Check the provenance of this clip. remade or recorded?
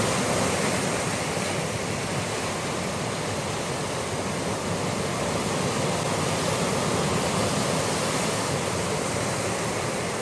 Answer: recorded